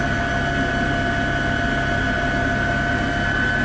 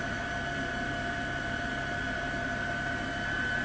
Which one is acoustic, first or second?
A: first